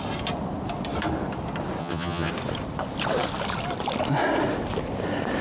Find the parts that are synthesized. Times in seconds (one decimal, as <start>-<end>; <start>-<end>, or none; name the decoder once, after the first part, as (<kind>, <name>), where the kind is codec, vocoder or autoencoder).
1.8-2.3 (vocoder, HiFi-GAN)